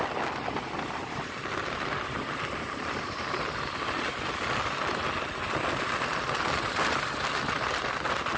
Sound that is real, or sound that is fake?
real